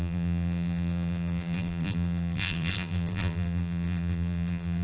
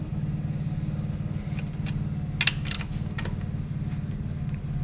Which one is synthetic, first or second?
first